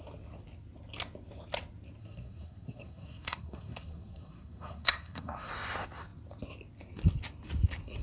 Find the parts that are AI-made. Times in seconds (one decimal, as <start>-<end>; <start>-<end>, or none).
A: 2.0-5.5

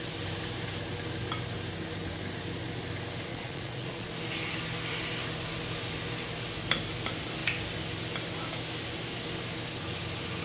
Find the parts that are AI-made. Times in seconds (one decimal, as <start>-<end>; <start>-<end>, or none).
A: 3.3-4.1

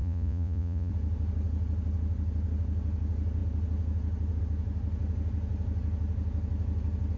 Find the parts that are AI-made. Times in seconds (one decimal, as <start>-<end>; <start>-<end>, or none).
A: 0.0-0.9

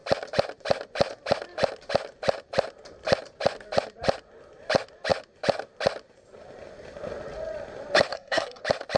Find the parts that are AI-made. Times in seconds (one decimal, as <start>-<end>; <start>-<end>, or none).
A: 8.1-8.6

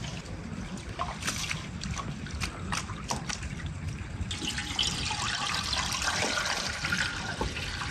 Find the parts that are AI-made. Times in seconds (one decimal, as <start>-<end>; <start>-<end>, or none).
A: none

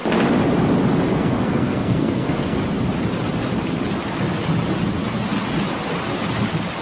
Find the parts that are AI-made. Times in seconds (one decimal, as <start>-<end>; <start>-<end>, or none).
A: 1.1-2.6

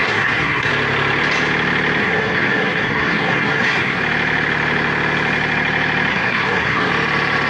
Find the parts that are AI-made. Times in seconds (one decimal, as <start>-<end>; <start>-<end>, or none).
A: 0.0-0.7; 2.0-4.0; 6.1-6.9

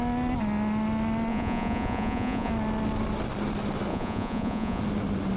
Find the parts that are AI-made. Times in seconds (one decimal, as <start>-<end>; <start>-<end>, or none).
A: 1.3-2.5; 3.9-4.8